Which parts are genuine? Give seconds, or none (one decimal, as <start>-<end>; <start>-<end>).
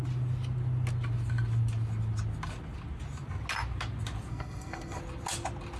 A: 0.0-4.3; 5.0-5.8